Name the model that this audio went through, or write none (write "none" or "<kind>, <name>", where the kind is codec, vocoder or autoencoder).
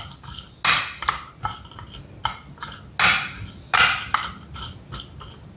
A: none